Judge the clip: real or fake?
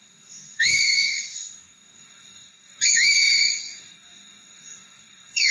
fake